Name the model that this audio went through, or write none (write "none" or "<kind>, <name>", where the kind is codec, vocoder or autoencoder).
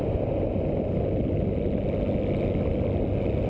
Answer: none